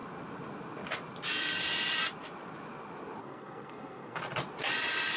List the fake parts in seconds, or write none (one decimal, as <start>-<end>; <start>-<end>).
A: 3.2-4.2

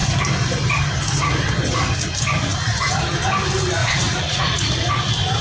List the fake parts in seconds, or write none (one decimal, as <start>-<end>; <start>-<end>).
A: 3.8-4.7